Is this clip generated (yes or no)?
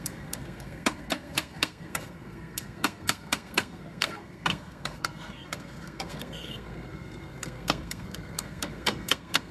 yes